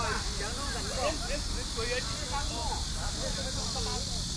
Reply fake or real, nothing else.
real